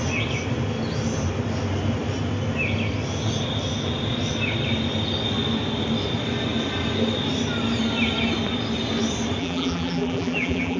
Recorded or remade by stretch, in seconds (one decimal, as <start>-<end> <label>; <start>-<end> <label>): 0.0-9.4 recorded; 9.4-10.8 remade